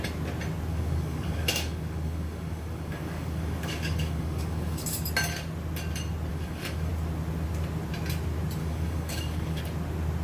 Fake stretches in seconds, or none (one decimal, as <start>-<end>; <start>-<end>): 0.7-5.1; 6.3-6.9; 8.6-9.6